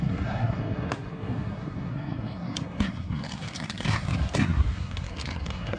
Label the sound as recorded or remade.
remade